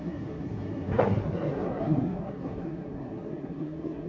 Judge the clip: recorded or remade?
remade